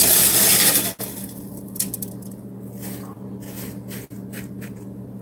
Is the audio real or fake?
real